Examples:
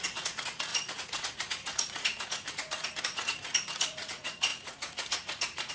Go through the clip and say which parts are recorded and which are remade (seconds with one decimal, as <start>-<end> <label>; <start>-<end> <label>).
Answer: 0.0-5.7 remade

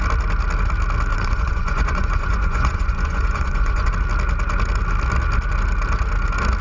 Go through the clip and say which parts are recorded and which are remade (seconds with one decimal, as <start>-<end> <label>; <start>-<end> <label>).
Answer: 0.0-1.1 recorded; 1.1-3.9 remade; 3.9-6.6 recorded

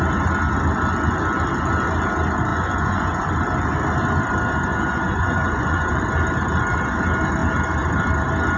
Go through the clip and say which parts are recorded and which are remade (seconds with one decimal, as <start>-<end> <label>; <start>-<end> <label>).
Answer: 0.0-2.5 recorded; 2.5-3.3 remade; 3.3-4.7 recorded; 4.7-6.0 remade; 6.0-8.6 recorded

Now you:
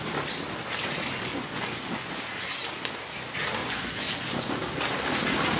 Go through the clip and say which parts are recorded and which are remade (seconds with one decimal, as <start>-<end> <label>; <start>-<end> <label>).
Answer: 0.0-1.3 recorded; 1.3-2.1 remade; 2.1-3.6 recorded; 3.6-4.6 remade; 4.6-5.6 recorded

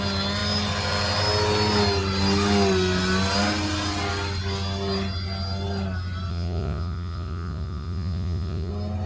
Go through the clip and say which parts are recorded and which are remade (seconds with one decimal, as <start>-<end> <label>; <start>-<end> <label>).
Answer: 0.0-6.3 recorded; 6.3-8.7 remade; 8.7-9.1 recorded

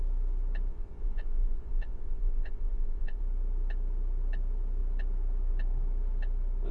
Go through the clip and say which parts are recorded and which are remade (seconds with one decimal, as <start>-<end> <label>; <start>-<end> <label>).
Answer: 0.0-0.7 recorded; 0.7-3.2 remade; 3.2-6.7 recorded

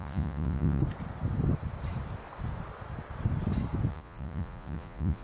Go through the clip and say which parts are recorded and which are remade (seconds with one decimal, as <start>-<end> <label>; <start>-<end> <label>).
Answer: 0.0-0.8 remade; 0.8-3.9 recorded; 3.9-5.2 remade

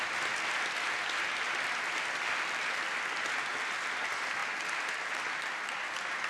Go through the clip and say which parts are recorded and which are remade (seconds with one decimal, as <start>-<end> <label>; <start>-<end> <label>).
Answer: 0.0-6.3 recorded